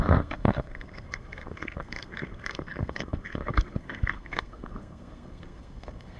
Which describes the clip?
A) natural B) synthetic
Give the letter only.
B